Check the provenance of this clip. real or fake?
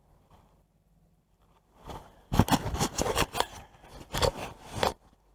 real